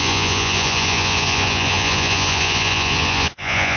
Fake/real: fake